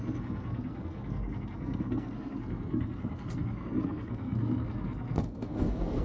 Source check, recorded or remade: remade